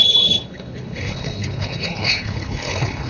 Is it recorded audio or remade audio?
remade